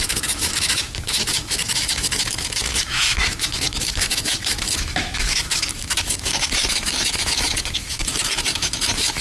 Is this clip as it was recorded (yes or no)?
no